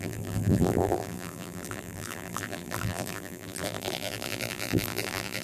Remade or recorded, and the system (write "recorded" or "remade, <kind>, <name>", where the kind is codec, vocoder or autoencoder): remade, vocoder, BigVGAN v2